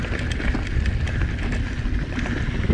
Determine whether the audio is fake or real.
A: real